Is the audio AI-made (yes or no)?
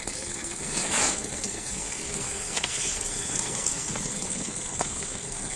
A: yes